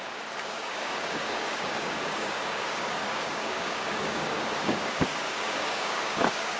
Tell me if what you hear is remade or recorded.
remade